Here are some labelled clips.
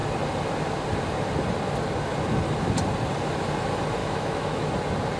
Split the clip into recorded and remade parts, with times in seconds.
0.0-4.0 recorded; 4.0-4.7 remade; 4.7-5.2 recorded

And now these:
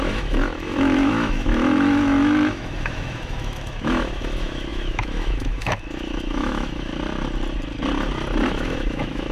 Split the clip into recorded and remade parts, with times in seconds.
0.0-6.9 remade; 6.9-8.5 recorded; 8.5-9.3 remade